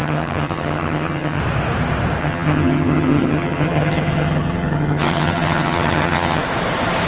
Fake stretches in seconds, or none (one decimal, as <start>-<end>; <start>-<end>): 0.0-1.4; 2.2-6.4